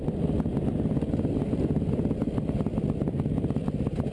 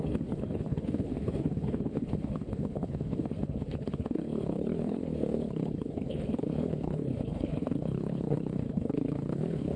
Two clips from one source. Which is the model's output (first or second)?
second